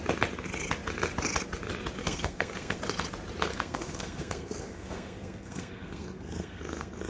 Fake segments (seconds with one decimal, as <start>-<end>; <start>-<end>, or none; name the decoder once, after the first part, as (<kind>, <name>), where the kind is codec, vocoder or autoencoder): 2.0-2.8 (codec, SNAC); 3.5-7.1